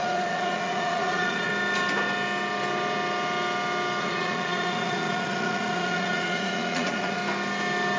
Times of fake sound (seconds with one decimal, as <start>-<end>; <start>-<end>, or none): 0.0-1.5; 4.0-7.2